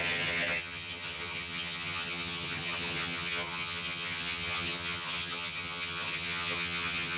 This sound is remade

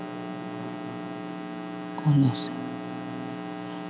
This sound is recorded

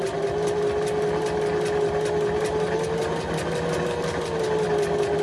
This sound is recorded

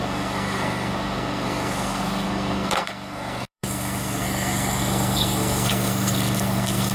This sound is remade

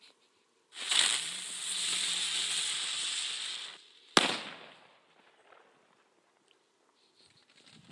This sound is recorded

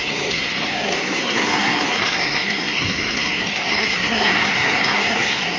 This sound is remade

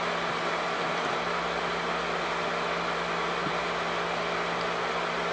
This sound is recorded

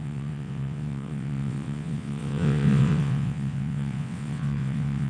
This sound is remade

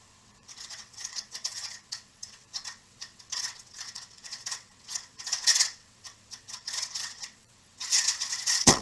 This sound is remade